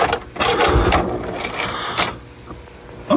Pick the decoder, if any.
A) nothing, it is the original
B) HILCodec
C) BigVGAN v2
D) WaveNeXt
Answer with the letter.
A